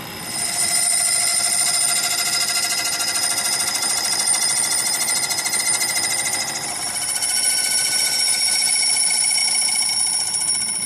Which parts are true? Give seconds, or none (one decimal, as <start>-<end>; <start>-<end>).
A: 0.0-10.9